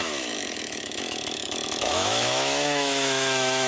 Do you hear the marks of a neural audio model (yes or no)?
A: yes